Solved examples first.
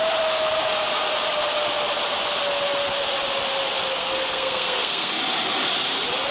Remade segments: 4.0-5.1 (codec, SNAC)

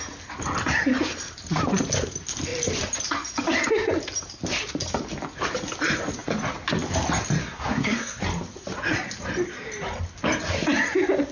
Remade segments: 7.4-8.2 (codec, SNAC)